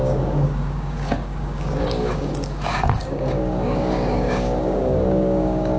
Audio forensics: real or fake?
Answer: fake